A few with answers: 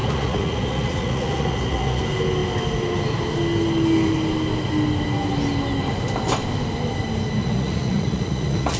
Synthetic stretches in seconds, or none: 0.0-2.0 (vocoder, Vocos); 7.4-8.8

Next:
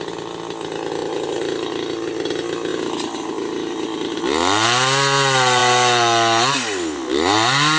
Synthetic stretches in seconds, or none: 1.0-1.7 (vocoder, BigVGAN v2); 2.7-4.2

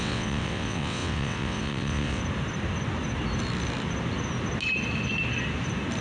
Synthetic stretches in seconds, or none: 0.0-2.2 (vocoder, WaveNeXt)

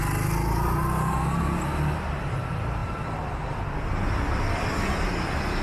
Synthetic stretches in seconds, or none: none